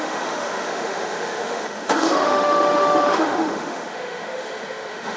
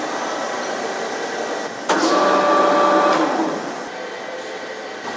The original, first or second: second